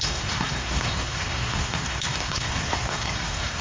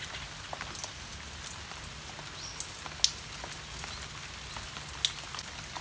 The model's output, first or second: first